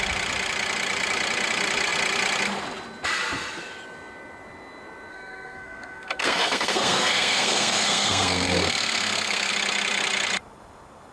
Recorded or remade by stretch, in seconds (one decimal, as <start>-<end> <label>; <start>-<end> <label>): 0.0-5.1 recorded; 5.1-9.5 remade; 9.5-11.1 recorded